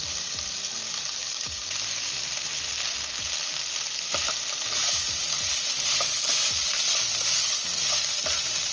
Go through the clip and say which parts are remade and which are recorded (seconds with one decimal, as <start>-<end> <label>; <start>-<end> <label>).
0.0-8.7 remade